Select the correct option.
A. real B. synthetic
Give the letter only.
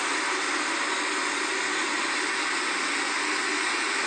A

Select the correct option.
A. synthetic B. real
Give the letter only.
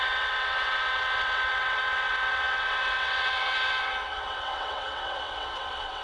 A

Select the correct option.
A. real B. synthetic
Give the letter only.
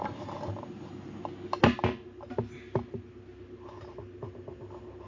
A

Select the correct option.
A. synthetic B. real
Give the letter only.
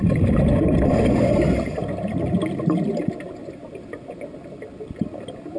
B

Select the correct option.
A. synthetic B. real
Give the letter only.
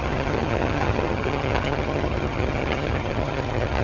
A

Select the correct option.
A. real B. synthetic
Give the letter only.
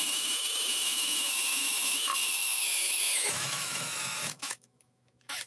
B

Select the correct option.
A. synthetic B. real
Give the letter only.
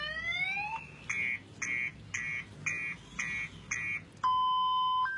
B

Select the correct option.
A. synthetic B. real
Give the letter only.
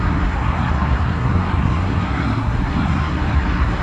A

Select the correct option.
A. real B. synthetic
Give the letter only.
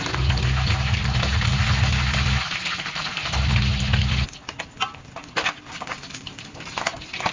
A